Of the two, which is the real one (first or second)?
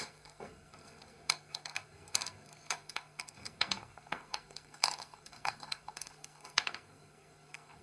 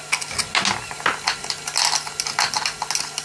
second